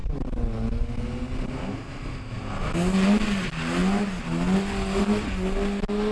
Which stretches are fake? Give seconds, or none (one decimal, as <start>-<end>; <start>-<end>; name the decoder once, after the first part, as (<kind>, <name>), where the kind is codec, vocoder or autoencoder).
none